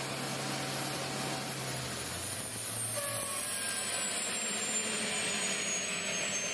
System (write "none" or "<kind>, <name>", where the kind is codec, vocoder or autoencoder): none